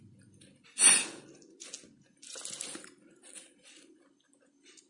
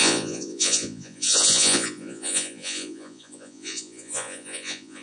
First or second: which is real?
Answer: first